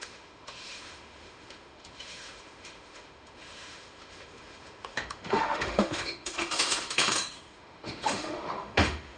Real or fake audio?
fake